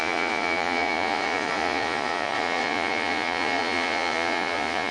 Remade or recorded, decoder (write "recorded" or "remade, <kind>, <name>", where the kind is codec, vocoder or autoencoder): remade, vocoder, Vocos